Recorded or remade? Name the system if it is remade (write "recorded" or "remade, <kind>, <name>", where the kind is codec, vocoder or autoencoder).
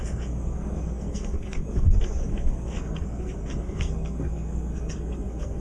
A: remade, codec, SNAC